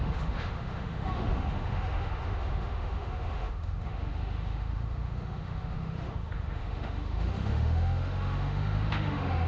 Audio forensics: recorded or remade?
remade